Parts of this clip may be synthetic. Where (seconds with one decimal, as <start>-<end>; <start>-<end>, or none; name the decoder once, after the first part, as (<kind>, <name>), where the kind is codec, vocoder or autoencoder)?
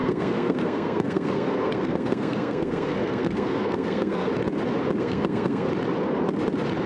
0.0-4.3 (codec, SNAC); 5.0-5.7